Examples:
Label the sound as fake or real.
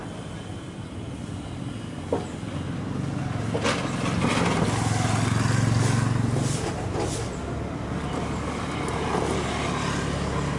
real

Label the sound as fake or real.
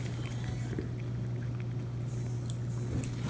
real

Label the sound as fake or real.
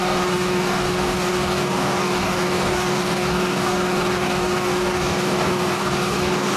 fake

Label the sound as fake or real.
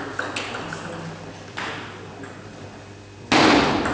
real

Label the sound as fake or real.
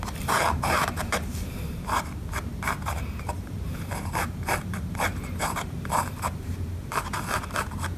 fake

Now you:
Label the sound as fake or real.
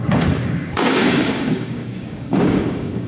fake